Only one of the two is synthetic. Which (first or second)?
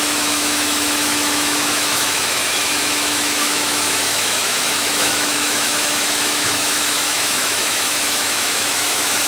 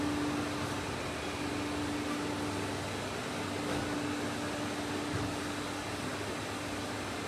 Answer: first